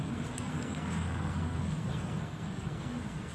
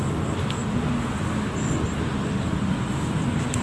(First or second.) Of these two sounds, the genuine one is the second